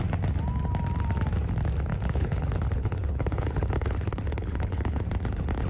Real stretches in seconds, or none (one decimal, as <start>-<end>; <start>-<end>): 0.0-1.9; 5.0-5.7